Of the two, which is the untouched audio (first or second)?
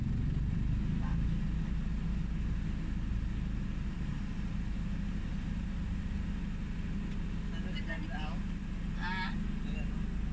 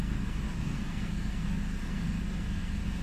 first